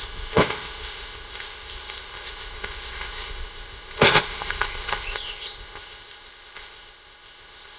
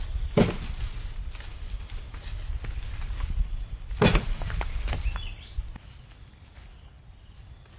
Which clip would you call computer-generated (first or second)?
first